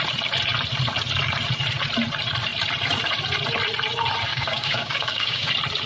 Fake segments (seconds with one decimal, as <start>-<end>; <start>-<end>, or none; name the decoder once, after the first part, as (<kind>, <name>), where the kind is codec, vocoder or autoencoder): 4.3-5.5 (codec, DAC)